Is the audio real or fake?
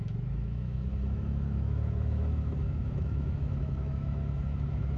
fake